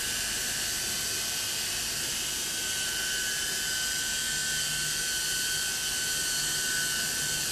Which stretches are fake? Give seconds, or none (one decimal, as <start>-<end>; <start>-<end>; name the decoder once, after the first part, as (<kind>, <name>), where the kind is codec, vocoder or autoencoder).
none